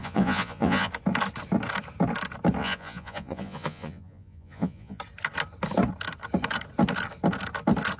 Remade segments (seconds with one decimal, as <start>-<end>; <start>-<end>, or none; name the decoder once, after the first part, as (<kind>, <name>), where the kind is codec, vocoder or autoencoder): 0.0-0.9 (vocoder, Vocos); 2.6-5.0